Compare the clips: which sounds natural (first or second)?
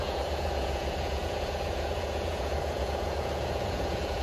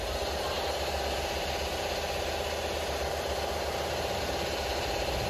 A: second